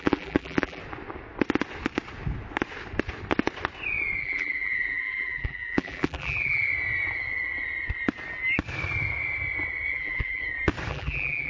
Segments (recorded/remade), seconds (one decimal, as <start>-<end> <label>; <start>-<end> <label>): 0.0-0.8 remade; 0.8-4.2 recorded; 4.2-6.7 remade; 6.7-9.9 recorded; 9.9-10.4 remade; 10.4-10.9 recorded; 10.9-11.5 remade